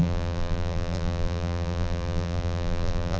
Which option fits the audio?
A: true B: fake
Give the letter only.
B